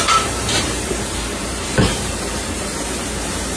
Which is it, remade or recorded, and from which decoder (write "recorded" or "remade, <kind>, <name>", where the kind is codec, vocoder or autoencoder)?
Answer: remade, vocoder, BigVGAN v2